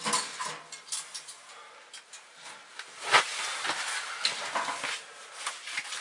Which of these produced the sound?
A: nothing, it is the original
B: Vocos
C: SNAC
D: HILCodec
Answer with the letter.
A